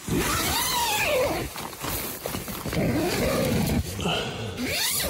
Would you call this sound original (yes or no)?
yes